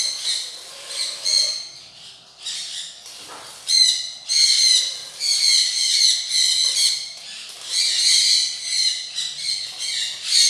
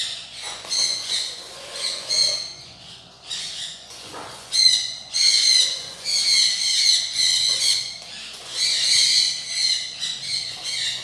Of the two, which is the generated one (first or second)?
second